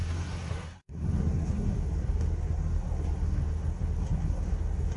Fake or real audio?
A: fake